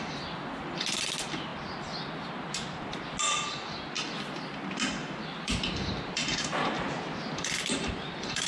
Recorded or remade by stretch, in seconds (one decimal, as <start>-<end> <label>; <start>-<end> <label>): 0.0-5.0 recorded; 5.0-8.5 remade